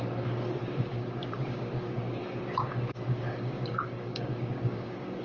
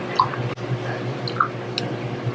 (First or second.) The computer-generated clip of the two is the first